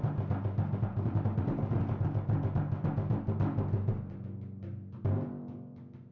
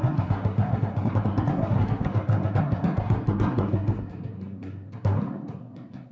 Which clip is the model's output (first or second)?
second